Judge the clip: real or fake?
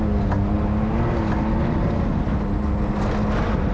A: real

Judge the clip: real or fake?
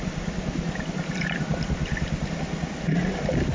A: real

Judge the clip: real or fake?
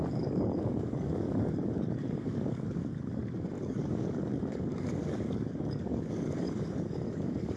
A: fake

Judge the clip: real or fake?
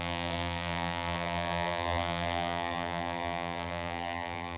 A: fake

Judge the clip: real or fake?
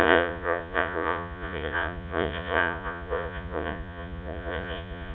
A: fake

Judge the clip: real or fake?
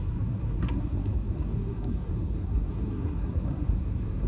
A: fake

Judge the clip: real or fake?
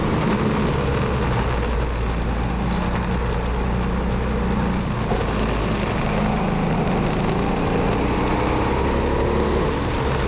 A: real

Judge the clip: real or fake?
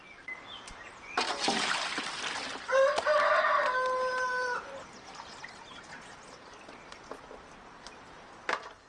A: real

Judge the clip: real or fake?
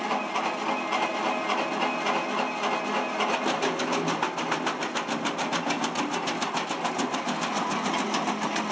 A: real